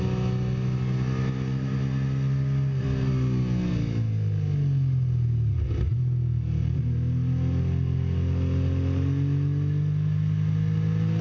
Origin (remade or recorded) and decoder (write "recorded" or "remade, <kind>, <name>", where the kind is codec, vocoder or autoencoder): recorded